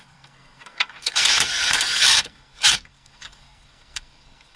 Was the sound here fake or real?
fake